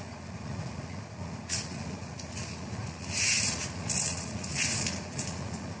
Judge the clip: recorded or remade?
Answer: remade